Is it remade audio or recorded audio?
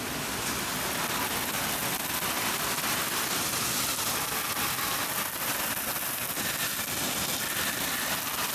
recorded